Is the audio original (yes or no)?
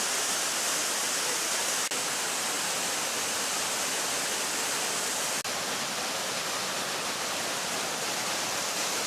yes